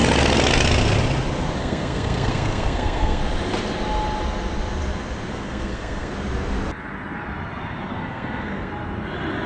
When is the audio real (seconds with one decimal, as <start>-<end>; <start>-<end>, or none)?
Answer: 0.0-1.6; 3.2-5.3; 6.1-7.9; 8.7-9.5